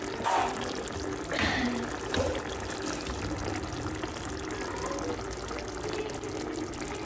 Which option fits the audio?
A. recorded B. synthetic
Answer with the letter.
A